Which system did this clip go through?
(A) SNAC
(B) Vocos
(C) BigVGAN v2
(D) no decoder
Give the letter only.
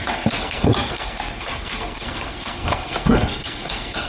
A